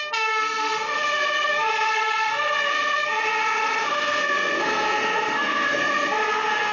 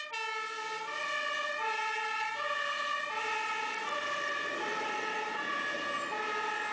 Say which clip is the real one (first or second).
second